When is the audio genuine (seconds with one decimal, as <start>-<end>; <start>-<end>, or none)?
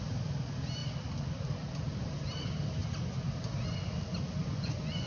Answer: 0.0-4.4